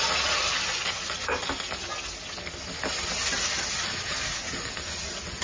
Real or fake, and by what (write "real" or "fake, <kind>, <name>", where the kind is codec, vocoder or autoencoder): real